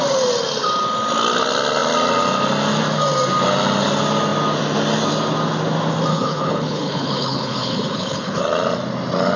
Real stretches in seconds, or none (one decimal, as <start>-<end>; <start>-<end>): 0.0-6.1; 8.4-9.4